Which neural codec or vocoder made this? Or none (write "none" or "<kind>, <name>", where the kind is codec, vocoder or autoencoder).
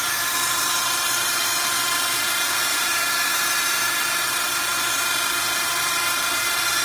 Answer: vocoder, BigVGAN v2